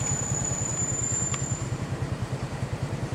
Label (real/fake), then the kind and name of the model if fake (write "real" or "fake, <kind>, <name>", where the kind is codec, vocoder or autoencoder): fake, vocoder, BigVGAN v2